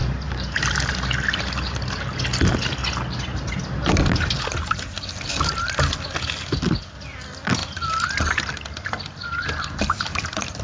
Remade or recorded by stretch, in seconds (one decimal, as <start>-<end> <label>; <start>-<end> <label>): 0.0-0.9 remade; 0.9-10.6 recorded